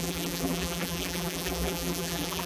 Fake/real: fake